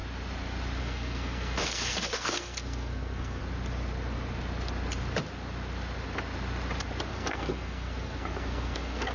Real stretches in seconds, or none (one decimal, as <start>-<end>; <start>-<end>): 0.0-0.8; 3.4-7.1